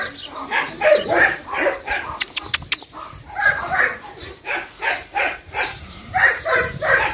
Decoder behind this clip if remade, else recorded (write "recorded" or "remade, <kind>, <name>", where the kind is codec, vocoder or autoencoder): remade, vocoder, BigVGAN v2